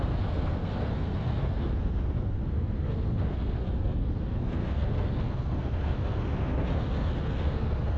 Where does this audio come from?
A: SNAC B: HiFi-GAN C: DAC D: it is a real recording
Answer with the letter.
A